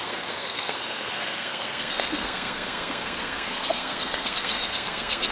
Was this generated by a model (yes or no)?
yes